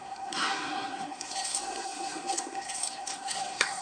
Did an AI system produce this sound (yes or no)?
yes